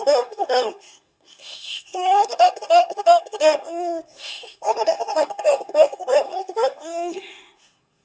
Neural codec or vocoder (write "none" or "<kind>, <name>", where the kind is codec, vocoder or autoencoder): codec, SNAC